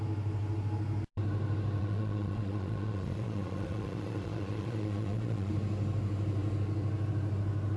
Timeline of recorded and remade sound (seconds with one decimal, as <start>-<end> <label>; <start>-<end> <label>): 0.0-1.8 recorded; 1.8-5.5 remade; 5.5-7.8 recorded